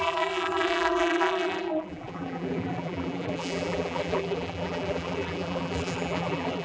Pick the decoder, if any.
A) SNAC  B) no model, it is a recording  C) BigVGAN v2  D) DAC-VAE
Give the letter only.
C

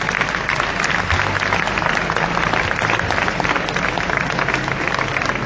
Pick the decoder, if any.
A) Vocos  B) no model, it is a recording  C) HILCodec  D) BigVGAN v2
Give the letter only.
B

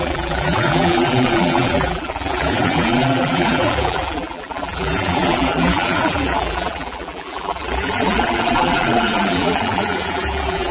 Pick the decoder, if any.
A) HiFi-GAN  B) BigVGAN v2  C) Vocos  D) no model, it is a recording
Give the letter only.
B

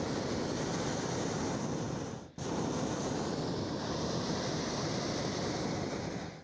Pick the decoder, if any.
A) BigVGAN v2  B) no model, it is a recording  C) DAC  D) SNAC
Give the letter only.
B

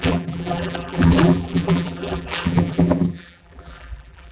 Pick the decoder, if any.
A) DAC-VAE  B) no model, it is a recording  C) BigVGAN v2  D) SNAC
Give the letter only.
C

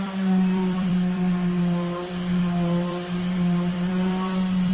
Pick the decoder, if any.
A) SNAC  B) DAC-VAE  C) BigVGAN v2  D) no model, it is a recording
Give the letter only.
C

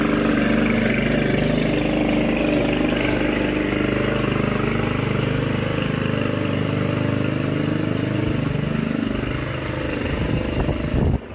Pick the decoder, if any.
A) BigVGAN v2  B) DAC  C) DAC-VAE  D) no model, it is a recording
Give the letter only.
D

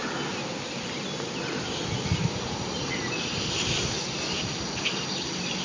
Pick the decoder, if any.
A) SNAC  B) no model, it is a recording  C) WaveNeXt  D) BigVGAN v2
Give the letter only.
B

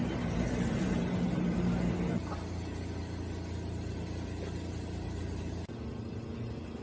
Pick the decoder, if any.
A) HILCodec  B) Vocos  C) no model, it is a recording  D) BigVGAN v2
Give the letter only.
C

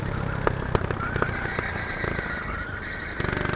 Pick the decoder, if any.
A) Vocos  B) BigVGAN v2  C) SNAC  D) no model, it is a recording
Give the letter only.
D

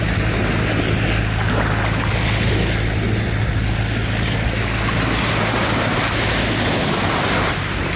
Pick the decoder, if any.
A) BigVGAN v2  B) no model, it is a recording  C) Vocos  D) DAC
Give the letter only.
B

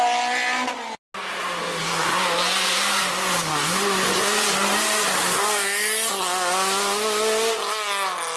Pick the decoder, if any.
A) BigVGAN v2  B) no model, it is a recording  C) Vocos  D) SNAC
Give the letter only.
B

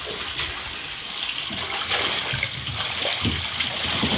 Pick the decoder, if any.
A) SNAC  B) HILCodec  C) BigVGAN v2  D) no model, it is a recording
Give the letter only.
D